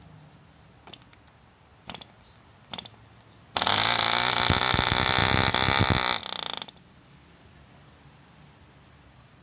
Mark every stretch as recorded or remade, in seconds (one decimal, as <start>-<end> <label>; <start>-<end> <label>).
0.0-9.4 recorded